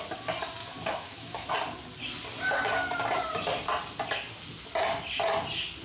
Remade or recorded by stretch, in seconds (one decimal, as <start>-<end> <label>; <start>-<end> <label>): 0.0-0.6 recorded; 0.6-1.5 remade; 1.5-5.8 recorded